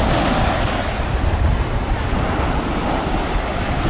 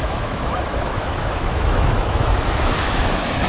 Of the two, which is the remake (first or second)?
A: second